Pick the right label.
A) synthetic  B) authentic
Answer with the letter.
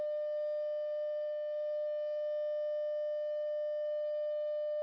A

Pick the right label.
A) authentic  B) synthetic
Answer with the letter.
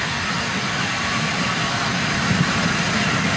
A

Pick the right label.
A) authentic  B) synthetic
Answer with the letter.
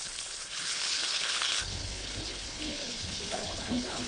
B